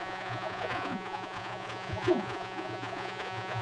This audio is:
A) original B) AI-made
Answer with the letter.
B